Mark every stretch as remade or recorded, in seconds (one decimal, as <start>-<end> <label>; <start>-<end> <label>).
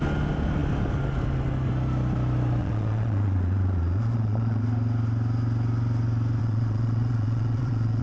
0.0-2.6 recorded; 2.6-4.6 remade; 4.6-6.4 recorded; 6.4-8.0 remade